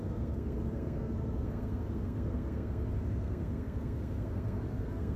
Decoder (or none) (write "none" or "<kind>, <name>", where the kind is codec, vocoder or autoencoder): codec, SNAC